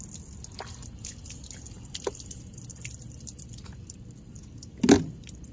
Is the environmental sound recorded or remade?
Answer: recorded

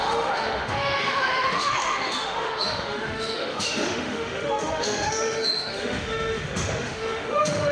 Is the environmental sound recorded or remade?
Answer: remade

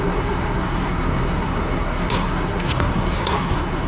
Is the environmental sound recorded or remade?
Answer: remade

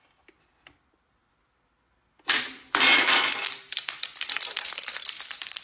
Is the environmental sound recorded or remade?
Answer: remade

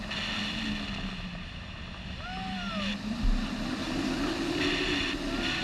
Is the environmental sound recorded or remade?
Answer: recorded